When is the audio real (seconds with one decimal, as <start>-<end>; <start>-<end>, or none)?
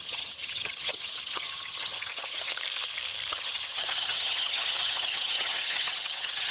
2.5-3.3